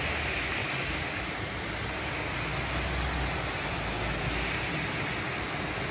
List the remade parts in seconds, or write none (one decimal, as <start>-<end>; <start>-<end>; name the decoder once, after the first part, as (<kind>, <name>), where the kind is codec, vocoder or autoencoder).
none

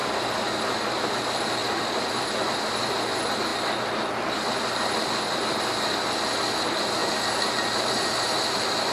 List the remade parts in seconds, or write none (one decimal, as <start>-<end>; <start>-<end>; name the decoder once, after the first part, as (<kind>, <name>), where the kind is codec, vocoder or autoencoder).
0.0-1.1 (vocoder, BigVGAN v2); 1.6-2.7

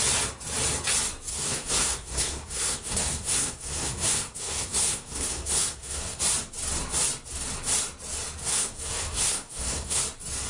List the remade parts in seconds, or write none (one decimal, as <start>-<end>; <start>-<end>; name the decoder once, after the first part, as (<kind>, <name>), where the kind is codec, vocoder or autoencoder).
1.3-6.2 (codec, SNAC); 8.4-10.0

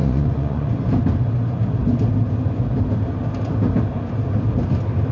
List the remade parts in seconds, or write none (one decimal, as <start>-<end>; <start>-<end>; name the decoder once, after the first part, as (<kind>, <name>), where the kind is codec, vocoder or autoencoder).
0.0-0.7 (vocoder, Vocos)

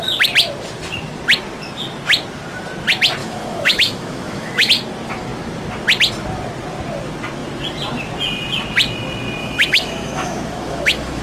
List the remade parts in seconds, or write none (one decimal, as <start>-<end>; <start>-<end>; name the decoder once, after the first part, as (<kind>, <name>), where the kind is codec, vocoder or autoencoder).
3.2-4.7 (autoencoder, DAC-VAE); 9.4-11.2

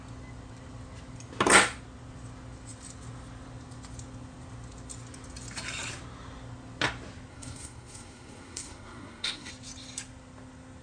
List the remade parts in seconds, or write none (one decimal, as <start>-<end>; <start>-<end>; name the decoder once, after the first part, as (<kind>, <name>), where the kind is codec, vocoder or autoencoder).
7.3-9.5 (codec, SNAC)

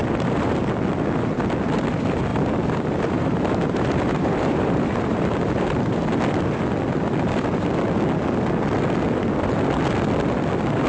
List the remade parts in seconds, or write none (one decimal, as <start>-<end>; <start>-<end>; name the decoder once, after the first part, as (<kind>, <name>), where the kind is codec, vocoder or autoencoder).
0.0-0.6 (vocoder, BigVGAN v2); 2.3-5.8

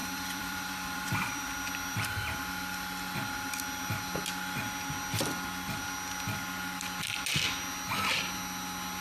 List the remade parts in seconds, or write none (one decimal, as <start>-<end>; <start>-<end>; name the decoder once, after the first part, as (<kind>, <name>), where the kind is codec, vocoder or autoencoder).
0.0-1.4 (vocoder, BigVGAN v2)